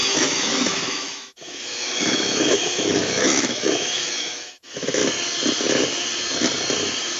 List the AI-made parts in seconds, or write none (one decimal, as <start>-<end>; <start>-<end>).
0.0-5.0